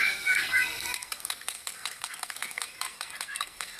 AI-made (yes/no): yes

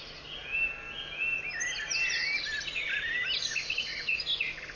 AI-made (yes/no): no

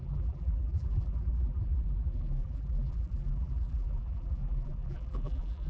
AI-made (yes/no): yes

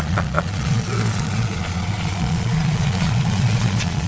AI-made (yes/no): yes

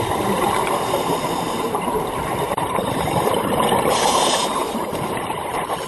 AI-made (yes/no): yes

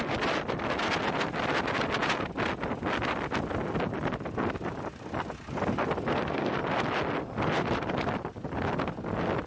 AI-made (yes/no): no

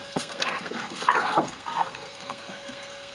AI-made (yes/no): yes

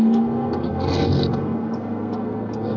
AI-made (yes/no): yes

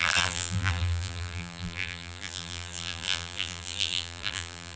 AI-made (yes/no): yes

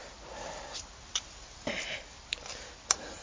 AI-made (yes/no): no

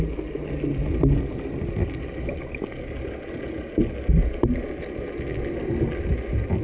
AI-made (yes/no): no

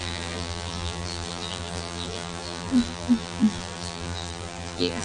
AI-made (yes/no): yes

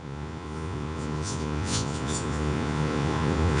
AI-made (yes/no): yes